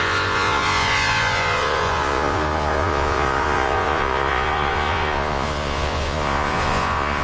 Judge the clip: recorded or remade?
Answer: remade